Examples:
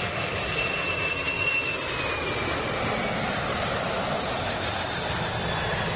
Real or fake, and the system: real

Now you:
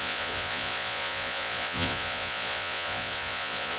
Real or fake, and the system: fake, vocoder, Vocos